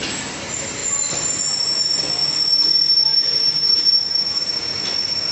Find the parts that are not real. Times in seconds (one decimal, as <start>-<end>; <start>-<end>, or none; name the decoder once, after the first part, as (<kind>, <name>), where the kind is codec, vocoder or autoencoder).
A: 3.1-4.7 (vocoder, BigVGAN v2)